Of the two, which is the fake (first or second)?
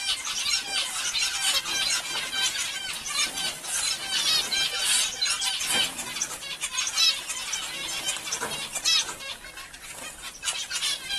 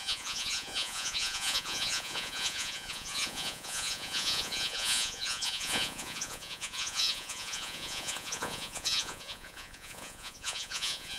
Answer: second